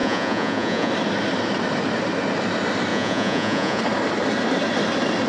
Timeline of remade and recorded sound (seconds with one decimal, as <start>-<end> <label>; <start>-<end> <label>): 0.0-0.9 remade; 0.9-2.9 recorded; 2.9-3.8 remade; 3.8-5.3 recorded